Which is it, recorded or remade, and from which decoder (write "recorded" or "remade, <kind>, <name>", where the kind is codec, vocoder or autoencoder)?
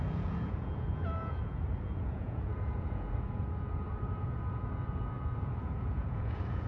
remade, vocoder, Vocos